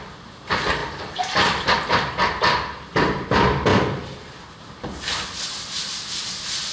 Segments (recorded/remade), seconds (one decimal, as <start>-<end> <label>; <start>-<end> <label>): 0.0-6.7 recorded